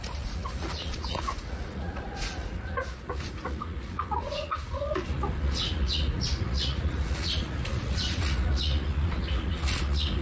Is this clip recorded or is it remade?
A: remade